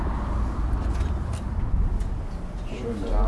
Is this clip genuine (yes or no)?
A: yes